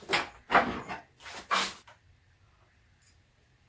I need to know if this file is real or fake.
real